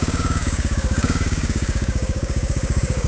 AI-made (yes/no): yes